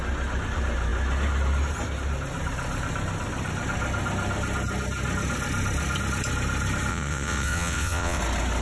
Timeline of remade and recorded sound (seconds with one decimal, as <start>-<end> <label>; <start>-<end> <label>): 0.0-6.9 recorded; 6.9-8.2 remade; 8.2-8.6 recorded